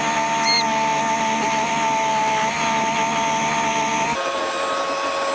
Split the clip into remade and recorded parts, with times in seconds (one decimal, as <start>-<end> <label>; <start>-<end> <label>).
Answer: 0.0-5.3 recorded